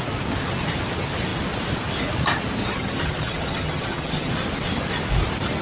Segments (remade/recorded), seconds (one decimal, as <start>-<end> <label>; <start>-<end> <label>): 0.0-2.6 recorded; 2.6-4.3 remade; 4.3-5.6 recorded